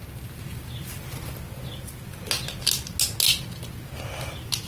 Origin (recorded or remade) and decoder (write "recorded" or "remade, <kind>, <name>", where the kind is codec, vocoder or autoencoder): recorded